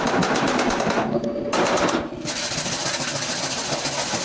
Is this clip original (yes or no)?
yes